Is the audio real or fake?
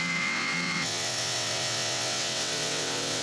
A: fake